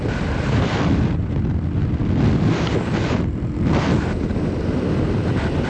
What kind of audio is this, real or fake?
real